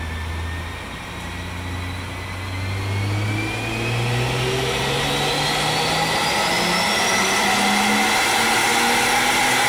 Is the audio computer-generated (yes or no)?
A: no